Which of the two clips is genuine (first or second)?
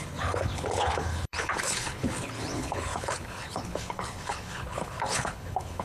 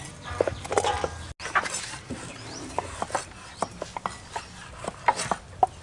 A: second